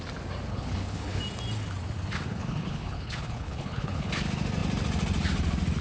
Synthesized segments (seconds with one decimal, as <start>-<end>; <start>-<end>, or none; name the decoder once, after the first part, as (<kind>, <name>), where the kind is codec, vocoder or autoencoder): 0.5-1.2 (codec, HILCodec); 2.3-4.1